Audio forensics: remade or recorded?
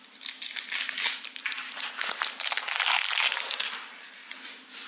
remade